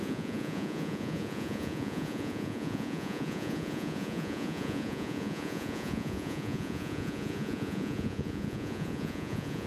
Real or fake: fake